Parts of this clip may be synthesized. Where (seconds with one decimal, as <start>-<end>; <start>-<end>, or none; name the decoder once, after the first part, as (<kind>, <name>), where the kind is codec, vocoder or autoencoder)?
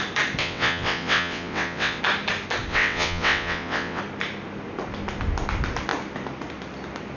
0.4-2.0 (vocoder, WaveNeXt); 2.7-4.0